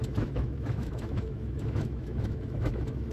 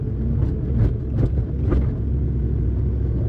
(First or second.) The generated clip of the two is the first